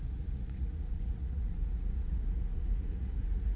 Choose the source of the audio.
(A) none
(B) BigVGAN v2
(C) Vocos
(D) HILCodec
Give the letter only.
C